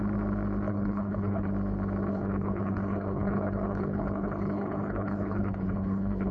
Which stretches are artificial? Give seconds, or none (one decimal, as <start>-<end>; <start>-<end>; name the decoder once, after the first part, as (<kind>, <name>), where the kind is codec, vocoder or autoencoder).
0.7-1.5 (codec, HILCodec); 2.1-6.3